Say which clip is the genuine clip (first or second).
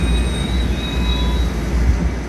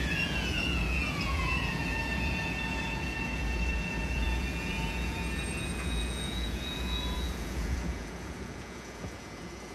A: first